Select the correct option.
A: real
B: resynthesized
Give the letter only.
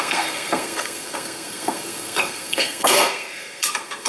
B